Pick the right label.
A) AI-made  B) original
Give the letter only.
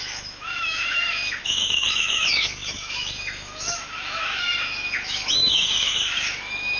A